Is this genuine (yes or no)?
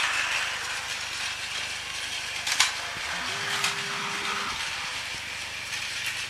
yes